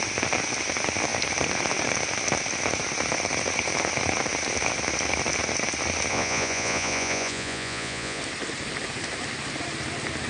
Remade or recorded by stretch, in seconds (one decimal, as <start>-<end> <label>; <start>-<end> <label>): 0.0-6.1 recorded; 6.1-8.2 remade; 8.2-10.3 recorded